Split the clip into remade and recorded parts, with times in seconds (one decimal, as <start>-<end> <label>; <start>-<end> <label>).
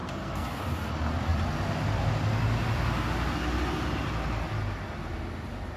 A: 0.0-0.6 remade; 0.6-5.8 recorded